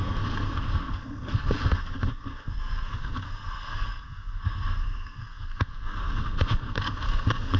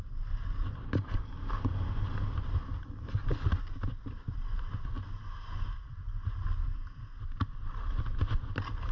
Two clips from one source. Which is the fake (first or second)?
first